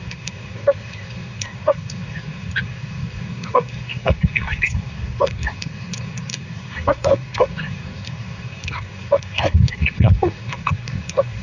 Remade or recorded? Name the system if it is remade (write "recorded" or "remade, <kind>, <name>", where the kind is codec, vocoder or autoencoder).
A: remade, codec, SNAC